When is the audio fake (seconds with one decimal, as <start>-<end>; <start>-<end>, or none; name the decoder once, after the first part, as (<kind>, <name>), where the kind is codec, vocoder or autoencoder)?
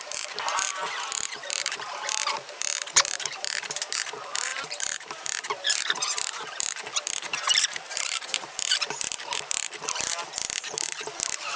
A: 0.0-11.6 (vocoder, BigVGAN v2)